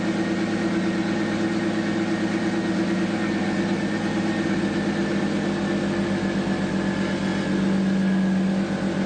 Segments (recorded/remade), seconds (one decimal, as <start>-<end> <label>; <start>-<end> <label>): 0.0-9.1 recorded